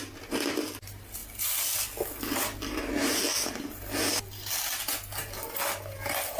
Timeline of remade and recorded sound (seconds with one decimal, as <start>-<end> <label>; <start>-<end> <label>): 0.0-6.4 recorded